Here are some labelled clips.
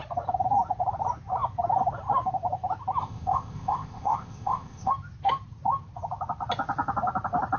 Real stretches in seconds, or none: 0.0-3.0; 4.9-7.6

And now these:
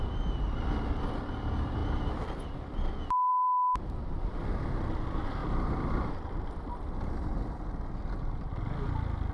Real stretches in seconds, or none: 0.0-3.3; 4.4-5.4; 6.3-9.3

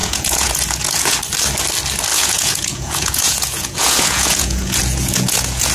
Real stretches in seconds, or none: 1.2-2.1

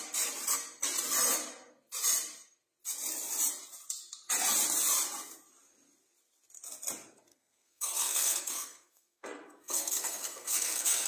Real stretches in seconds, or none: 0.0-7.3

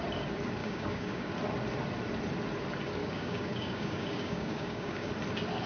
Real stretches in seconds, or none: 0.0-0.6; 1.3-3.0; 5.1-5.7

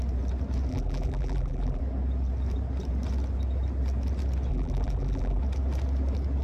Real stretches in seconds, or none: 0.0-0.7; 1.8-4.5; 5.4-6.4

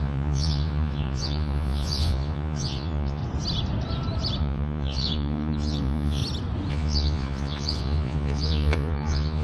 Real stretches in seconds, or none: 3.2-4.4; 6.2-6.7

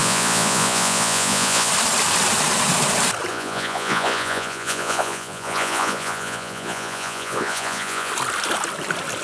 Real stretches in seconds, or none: 1.7-3.3; 8.1-9.2